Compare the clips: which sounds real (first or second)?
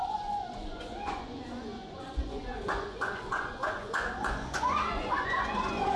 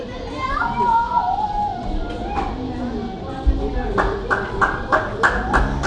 second